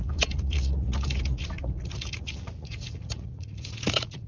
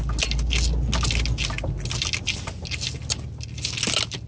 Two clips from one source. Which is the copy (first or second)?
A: first